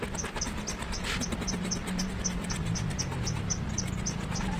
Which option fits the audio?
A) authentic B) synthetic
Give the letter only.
A